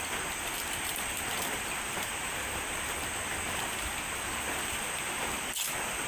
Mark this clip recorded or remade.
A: recorded